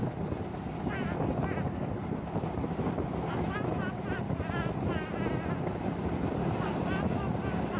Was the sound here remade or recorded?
recorded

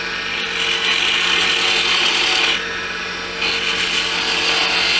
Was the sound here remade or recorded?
recorded